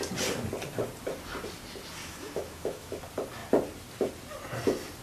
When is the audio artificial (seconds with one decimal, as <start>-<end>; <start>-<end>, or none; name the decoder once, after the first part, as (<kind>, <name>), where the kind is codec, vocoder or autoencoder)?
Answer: 2.0-3.0 (autoencoder, DAC-VAE)